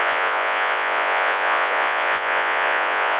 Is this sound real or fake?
fake